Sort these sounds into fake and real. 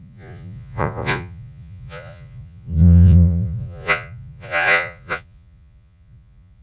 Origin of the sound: fake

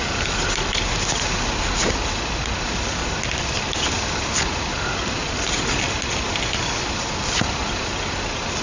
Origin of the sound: real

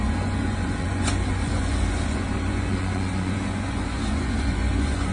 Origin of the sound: fake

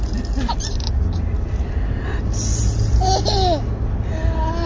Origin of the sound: real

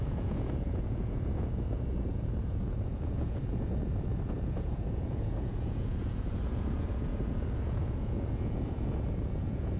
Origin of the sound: fake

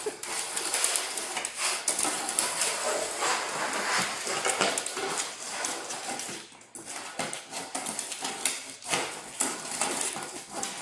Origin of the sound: real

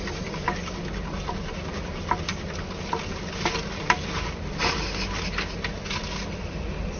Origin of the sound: real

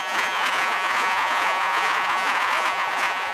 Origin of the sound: fake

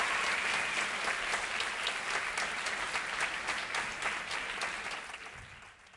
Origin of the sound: real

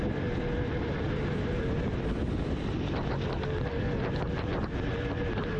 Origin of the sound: real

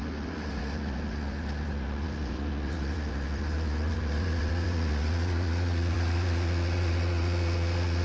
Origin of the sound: fake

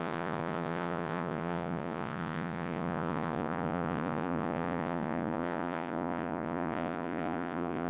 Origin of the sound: fake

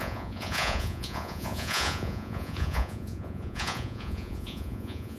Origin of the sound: fake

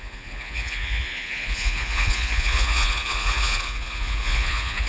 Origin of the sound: fake